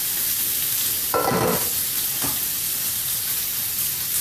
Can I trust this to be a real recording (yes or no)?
yes